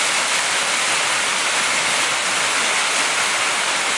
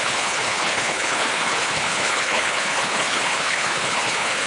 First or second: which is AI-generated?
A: second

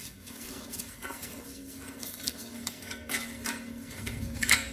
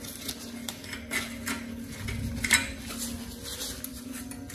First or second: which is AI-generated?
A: first